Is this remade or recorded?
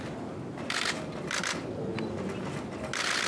recorded